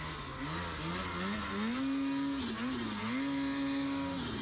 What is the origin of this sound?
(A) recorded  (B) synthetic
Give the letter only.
A